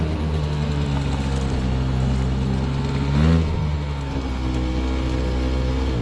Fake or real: real